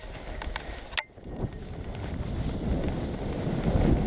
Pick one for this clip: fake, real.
real